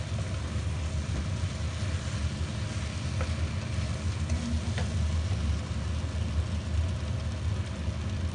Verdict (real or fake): real